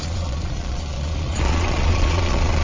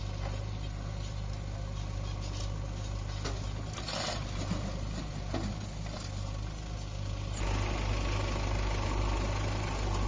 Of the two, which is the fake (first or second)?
first